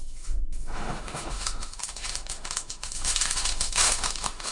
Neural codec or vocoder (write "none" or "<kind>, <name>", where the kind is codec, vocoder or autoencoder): autoencoder, DAC-VAE